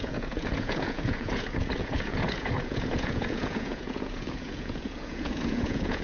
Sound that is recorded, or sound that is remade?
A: remade